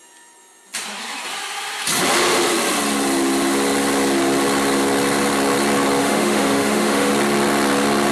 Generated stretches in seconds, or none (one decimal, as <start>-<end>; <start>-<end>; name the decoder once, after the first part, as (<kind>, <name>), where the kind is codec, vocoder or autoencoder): 6.0-7.1 (autoencoder, DAC-VAE)